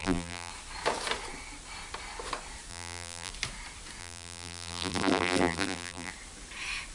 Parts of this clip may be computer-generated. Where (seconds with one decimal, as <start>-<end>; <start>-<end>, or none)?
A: 0.0-0.5; 2.7-3.3; 4.0-6.1